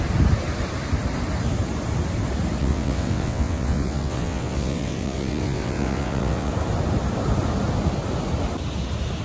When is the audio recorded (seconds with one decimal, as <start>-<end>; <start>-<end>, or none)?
0.0-2.6; 6.5-9.2